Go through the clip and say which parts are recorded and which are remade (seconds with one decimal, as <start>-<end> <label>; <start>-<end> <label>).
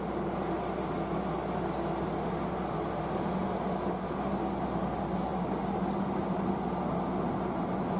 0.0-8.0 recorded